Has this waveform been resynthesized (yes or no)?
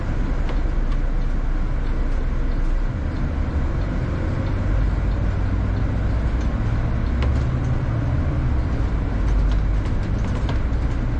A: no